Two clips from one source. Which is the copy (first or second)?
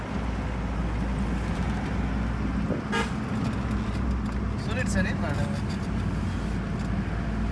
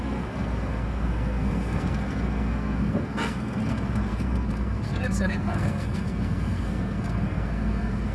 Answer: second